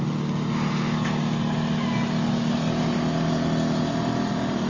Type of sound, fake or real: real